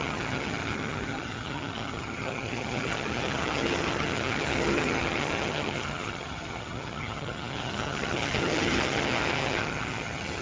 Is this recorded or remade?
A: remade